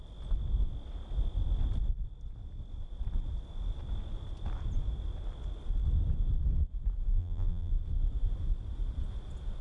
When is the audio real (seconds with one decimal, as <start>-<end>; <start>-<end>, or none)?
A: 0.0-7.1; 7.7-9.6